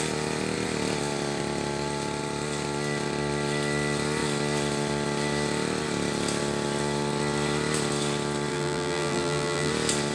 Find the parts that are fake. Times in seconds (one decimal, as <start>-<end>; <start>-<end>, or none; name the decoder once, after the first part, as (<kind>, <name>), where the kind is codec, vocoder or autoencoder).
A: 8.5-9.7 (vocoder, BigVGAN v2)